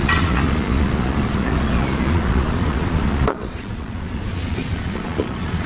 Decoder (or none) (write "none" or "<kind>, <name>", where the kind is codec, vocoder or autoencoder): vocoder, Vocos